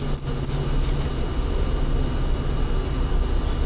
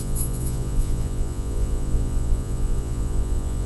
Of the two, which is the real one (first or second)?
first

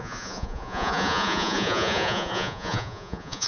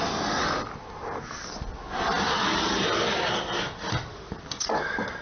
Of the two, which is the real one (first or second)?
second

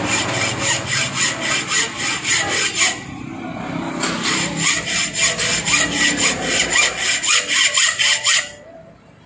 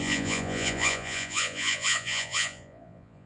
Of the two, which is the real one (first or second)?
first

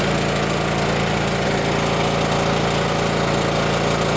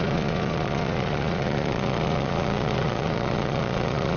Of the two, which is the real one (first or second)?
first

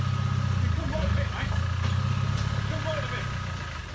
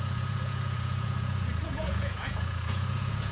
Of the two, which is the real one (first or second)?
first